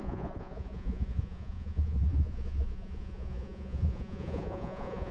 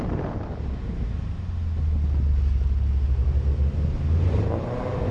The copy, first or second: first